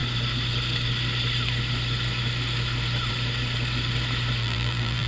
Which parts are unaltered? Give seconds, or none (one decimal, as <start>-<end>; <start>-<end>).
0.0-4.4